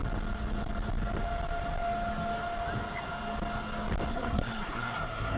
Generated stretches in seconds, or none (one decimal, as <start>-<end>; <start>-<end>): 4.1-5.4